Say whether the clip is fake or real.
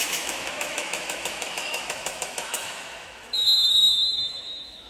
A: fake